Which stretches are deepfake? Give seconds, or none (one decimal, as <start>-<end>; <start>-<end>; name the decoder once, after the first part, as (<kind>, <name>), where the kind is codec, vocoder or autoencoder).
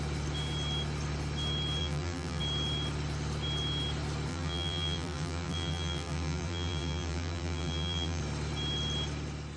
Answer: 1.8-2.4 (vocoder, BigVGAN v2); 4.3-8.2